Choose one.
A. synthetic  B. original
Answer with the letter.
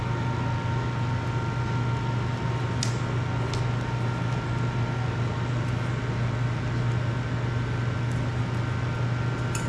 B